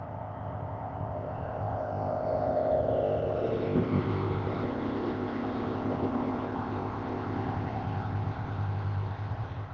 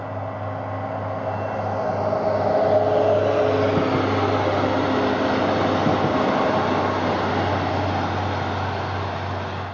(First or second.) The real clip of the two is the second